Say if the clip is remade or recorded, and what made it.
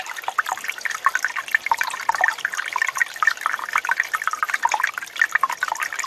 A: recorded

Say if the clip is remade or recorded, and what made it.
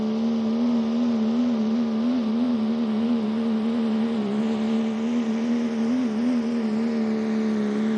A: recorded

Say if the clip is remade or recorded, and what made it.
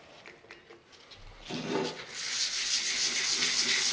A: recorded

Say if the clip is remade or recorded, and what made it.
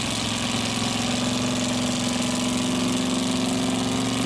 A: recorded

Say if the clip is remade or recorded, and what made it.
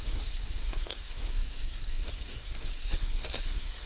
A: remade, codec, SNAC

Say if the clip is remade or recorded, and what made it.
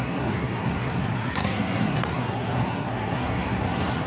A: remade, codec, SNAC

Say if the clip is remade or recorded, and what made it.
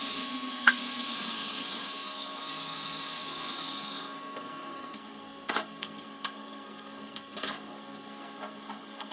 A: remade, codec, SNAC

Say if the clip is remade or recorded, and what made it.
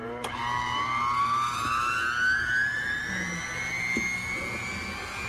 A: recorded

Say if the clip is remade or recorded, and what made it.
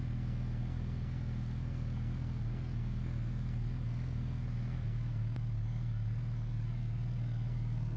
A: remade, codec, SNAC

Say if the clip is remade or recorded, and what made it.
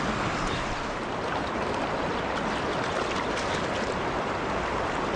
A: recorded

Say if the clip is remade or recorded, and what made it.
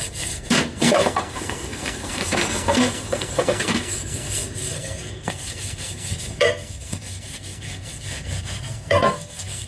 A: remade, codec, SNAC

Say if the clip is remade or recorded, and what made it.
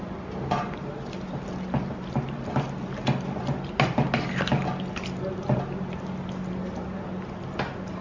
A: recorded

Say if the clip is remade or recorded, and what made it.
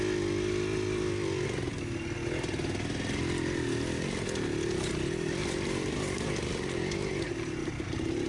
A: recorded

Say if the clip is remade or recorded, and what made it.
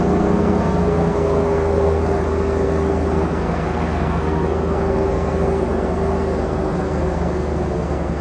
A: remade, codec, SNAC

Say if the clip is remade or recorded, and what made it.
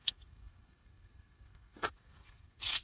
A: remade, codec, SNAC